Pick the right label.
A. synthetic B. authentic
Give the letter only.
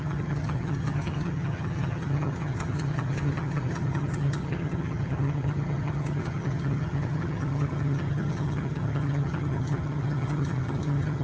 A